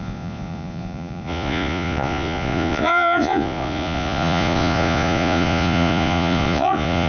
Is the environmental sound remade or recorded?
remade